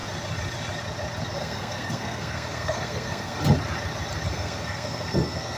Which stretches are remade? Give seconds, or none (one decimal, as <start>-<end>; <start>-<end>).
1.4-3.4; 4.3-5.6